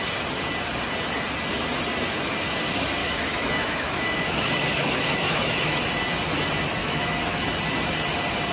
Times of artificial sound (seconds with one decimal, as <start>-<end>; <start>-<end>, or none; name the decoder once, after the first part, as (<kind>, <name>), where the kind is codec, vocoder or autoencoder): 3.0-5.8 (autoencoder, DAC-VAE); 6.8-7.4